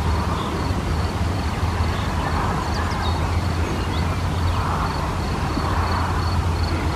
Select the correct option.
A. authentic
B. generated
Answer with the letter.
A